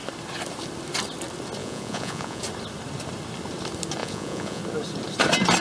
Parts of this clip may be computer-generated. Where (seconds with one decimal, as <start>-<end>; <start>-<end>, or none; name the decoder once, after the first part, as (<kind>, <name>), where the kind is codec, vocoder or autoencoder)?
1.6-2.4 (vocoder, Vocos); 4.0-4.6

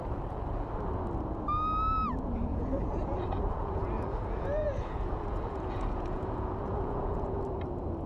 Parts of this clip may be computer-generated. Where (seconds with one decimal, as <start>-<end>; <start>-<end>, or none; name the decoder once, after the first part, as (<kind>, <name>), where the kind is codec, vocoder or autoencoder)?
2.5-7.4 (vocoder, Vocos)